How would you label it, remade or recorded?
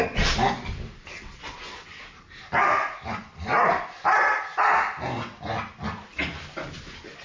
recorded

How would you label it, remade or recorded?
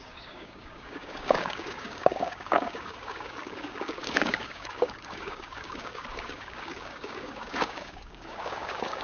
remade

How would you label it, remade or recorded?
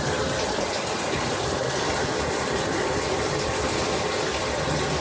recorded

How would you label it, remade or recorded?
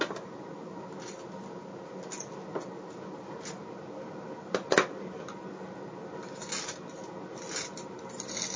recorded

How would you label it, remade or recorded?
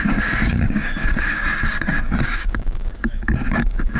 remade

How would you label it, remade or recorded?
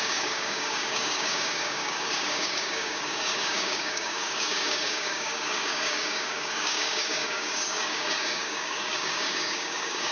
remade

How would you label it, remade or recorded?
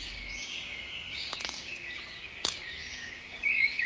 remade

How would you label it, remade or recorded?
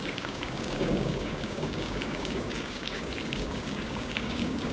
remade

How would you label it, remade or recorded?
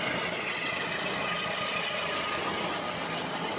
recorded